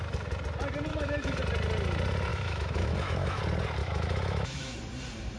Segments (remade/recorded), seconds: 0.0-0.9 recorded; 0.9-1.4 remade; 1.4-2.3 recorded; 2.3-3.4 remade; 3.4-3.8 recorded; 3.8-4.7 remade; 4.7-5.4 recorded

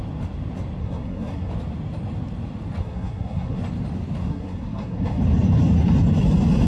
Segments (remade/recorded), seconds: 0.0-0.8 recorded; 0.8-1.5 remade; 1.5-2.8 recorded; 2.8-3.6 remade; 3.6-4.2 recorded; 4.2-5.2 remade; 5.2-6.7 recorded

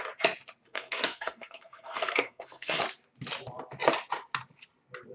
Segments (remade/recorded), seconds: 0.0-0.7 recorded; 0.7-2.8 remade; 2.8-5.1 recorded

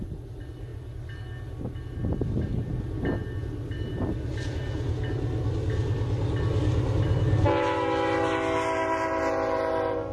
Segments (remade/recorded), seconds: 0.0-10.1 recorded